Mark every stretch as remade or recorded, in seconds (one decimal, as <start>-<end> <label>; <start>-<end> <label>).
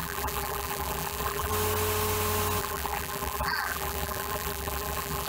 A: 0.0-1.5 remade; 1.5-2.6 recorded; 2.6-5.3 remade